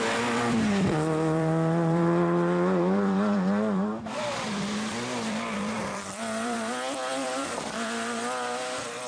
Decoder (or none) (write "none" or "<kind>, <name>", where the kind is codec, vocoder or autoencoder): vocoder, BigVGAN v2